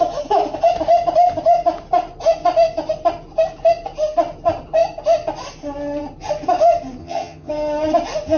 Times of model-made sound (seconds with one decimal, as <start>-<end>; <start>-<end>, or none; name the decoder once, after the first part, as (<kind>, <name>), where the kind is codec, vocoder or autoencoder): 7.0-7.5 (vocoder, HiFi-GAN)